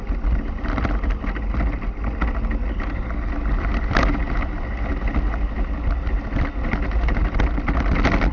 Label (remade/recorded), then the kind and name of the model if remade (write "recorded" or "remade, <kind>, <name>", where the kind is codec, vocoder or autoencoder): recorded